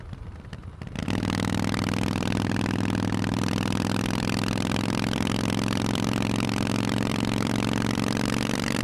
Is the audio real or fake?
fake